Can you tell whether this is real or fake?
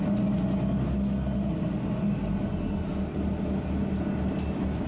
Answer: real